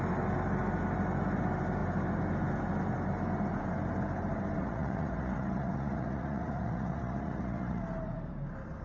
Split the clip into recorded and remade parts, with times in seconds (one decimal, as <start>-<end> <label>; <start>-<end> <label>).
0.0-4.6 recorded; 4.6-7.8 remade; 7.8-8.8 recorded